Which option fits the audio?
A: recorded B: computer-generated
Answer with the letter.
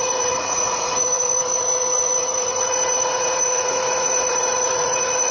B